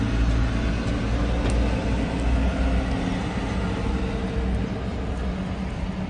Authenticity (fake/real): real